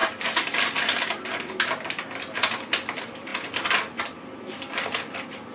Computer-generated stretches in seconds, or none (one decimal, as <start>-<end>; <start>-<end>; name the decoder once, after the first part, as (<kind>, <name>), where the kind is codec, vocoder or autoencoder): none